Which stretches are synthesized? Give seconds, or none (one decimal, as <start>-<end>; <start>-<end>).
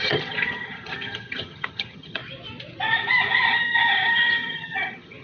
0.0-2.2; 3.3-5.2